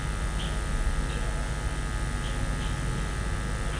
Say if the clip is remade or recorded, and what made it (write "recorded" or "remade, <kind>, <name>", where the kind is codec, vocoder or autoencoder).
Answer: recorded